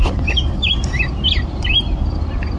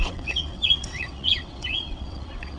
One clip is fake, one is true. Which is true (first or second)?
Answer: first